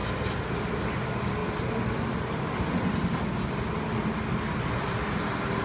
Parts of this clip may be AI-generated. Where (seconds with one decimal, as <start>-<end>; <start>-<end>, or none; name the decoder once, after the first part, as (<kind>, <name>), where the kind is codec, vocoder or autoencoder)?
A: none